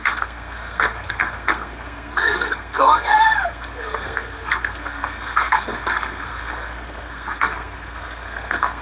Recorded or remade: remade